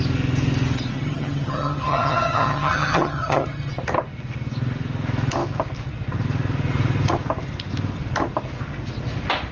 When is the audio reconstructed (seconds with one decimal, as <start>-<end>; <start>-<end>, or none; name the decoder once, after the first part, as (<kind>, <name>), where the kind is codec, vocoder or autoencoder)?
0.9-3.7 (vocoder, HiFi-GAN)